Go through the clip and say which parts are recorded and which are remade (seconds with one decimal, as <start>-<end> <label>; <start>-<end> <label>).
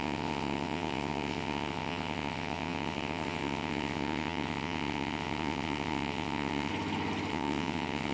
0.0-6.7 remade; 6.7-7.3 recorded; 7.3-8.1 remade